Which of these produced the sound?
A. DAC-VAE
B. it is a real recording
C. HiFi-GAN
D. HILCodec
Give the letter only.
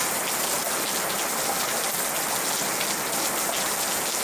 B